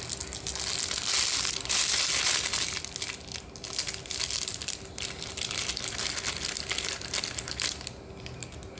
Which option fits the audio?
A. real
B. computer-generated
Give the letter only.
A